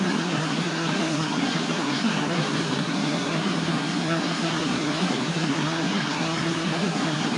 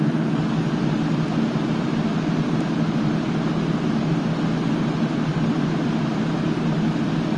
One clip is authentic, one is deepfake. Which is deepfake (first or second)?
first